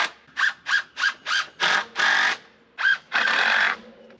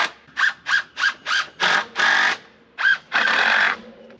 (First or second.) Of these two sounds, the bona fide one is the first